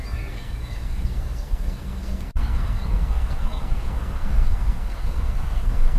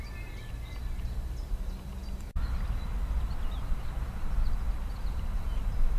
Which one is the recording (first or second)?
second